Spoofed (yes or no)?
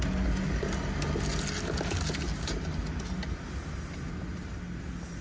no